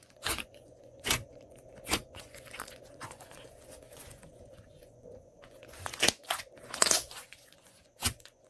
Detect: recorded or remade remade